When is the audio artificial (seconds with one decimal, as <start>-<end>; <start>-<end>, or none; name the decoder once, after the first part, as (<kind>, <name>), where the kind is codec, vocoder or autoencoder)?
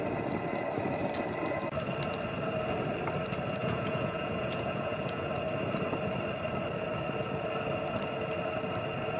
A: 3.6-5.3 (vocoder, Vocos)